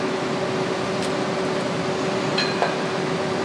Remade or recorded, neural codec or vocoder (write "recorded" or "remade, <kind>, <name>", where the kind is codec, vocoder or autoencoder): recorded